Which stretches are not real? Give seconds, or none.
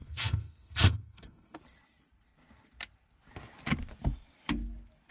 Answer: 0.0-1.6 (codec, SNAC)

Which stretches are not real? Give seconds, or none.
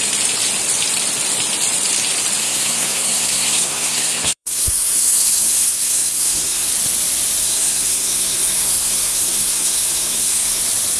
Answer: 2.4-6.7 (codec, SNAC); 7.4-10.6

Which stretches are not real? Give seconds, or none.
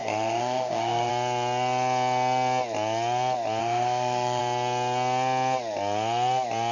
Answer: 0.0-1.1 (codec, SNAC); 3.6-4.4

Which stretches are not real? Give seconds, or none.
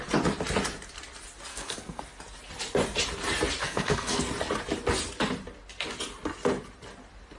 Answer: 1.5-2.0 (codec, SNAC); 3.6-4.3